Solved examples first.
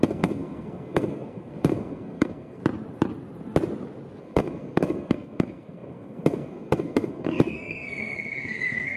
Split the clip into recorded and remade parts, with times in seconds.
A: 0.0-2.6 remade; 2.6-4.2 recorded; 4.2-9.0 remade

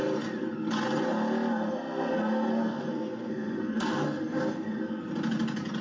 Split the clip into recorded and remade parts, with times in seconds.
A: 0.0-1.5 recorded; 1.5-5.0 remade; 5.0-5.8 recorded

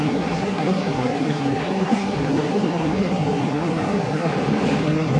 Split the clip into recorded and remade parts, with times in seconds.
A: 0.0-4.3 remade; 4.3-4.8 recorded; 4.8-5.2 remade